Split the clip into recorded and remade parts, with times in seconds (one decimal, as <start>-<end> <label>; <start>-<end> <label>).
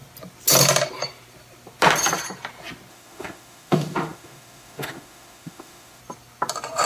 0.0-2.9 recorded; 2.9-6.0 remade; 6.0-6.9 recorded